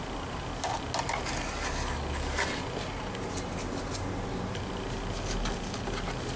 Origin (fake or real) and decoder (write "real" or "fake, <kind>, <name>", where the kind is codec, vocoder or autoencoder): real